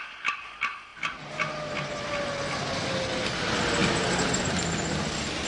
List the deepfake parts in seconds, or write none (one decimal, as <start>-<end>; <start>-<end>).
none